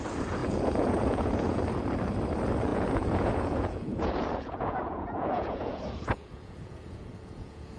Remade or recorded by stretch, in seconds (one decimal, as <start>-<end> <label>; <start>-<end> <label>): 0.0-0.4 recorded; 0.4-1.6 remade; 1.6-2.7 recorded; 2.7-7.8 remade